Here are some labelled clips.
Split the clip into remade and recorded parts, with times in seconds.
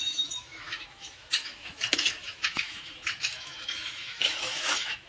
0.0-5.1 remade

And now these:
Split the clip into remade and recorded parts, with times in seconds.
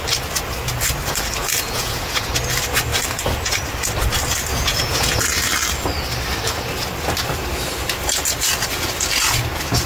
0.0-1.4 recorded; 1.4-2.3 remade; 2.3-4.5 recorded; 4.5-5.2 remade; 5.2-9.9 recorded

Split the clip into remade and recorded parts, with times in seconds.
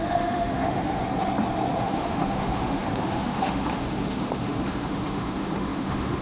0.0-1.0 remade; 1.0-1.8 recorded; 1.8-6.2 remade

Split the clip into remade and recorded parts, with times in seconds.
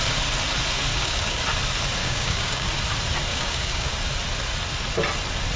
0.0-0.9 recorded; 0.9-1.4 remade; 1.4-2.0 recorded; 2.0-2.7 remade; 2.7-3.3 recorded; 3.3-3.9 remade; 3.9-5.6 recorded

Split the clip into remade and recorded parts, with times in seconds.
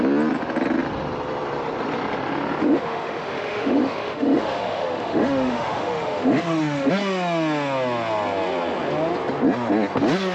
0.0-2.6 recorded; 2.6-6.9 remade; 6.9-10.3 recorded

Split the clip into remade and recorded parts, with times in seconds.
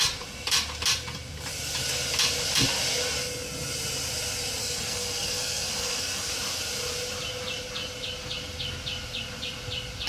0.0-4.6 recorded; 4.6-6.3 remade; 6.3-10.1 recorded